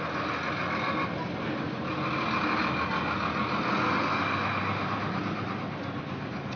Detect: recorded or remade recorded